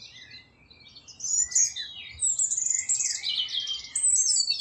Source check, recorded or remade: recorded